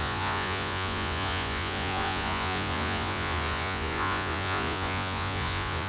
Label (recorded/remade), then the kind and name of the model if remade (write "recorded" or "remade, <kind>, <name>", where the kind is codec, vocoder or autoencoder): remade, vocoder, Vocos